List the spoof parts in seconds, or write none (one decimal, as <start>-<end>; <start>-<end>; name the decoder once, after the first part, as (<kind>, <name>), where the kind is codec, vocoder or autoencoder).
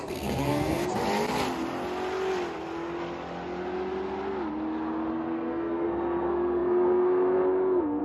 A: 0.0-1.0 (codec, SNAC); 5.1-8.0